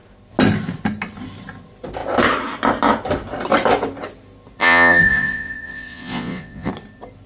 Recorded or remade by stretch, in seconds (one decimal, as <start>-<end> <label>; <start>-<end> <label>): 0.0-4.6 recorded; 4.6-6.7 remade; 6.7-7.3 recorded